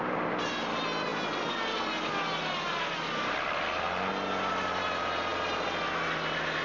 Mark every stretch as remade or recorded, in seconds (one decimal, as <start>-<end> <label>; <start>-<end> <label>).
0.0-6.6 recorded